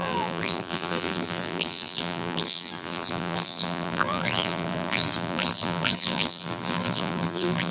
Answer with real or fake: fake